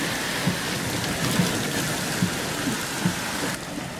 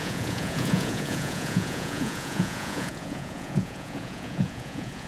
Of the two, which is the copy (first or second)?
second